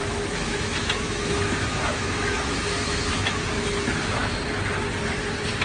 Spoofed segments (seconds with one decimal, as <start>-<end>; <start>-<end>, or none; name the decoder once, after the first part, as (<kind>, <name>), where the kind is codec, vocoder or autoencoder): 0.0-3.4 (autoencoder, DAC-VAE)